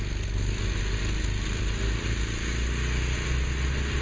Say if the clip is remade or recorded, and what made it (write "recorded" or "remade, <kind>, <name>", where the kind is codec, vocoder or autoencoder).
recorded